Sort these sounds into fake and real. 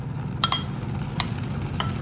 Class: real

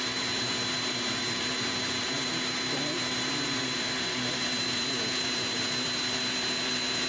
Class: fake